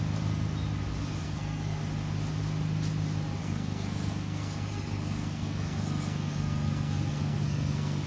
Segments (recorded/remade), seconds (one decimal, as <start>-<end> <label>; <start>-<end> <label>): 0.0-1.2 recorded; 1.2-1.8 remade; 1.8-3.4 recorded; 3.4-8.1 remade